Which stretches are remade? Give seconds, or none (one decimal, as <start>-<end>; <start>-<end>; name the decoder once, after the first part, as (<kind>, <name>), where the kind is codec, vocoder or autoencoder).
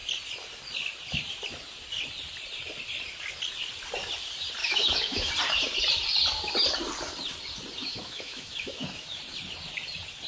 4.6-5.3 (autoencoder, DAC-VAE); 7.8-9.2